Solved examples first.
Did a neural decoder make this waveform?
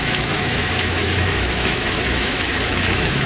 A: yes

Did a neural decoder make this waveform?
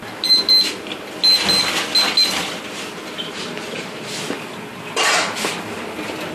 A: no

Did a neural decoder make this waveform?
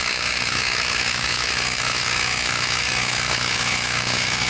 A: yes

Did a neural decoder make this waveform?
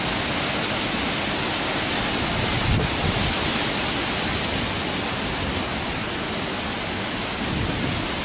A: no